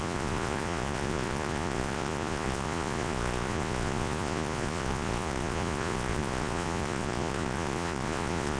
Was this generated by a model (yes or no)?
yes